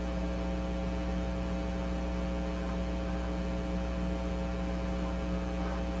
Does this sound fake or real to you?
real